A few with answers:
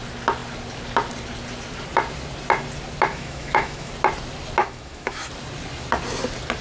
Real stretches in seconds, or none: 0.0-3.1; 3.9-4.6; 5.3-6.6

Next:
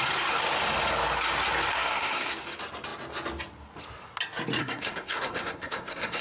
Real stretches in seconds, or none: 0.0-1.7; 2.3-4.6

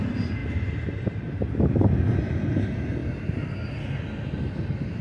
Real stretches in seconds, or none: 0.0-5.0

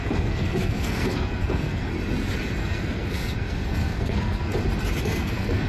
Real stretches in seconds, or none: 1.9-2.6; 4.5-5.0

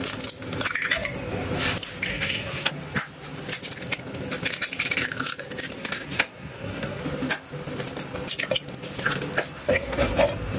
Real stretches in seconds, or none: 0.0-2.1; 2.7-5.7; 7.0-9.6; 10.1-10.6